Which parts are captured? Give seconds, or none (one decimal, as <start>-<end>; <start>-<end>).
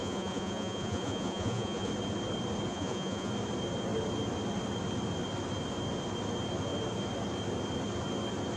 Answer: 1.9-2.7; 3.3-8.6